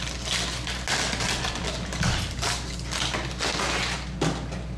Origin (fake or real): real